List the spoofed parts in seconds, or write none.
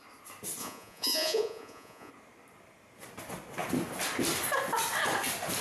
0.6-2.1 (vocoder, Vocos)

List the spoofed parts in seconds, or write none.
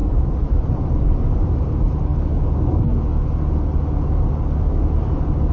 0.0-1.5 (vocoder, BigVGAN v2)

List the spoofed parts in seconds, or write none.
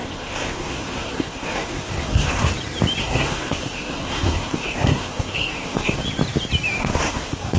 0.0-2.5 (codec, SNAC); 3.0-6.0; 6.8-7.6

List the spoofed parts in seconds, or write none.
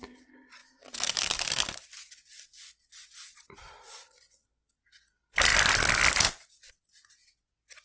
0.6-1.3 (autoencoder, DAC-VAE)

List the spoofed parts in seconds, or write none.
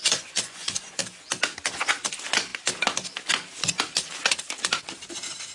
0.0-1.0 (vocoder, Vocos)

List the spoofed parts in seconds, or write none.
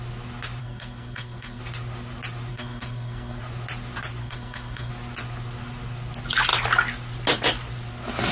0.6-1.6 (codec, SNAC); 2.5-3.4; 4.2-4.9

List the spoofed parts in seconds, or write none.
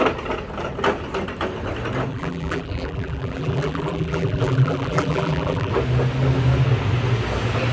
2.1-5.7 (vocoder, BigVGAN v2)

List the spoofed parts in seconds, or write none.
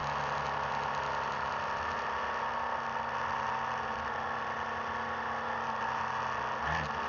none